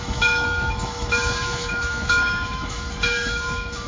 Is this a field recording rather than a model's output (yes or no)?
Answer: no